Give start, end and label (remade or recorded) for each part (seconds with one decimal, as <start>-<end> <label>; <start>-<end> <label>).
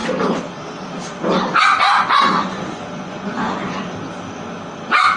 0.0-2.0 recorded; 2.0-3.8 remade; 3.8-5.2 recorded